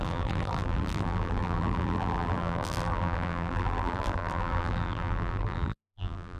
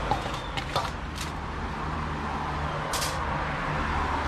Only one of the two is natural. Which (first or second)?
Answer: second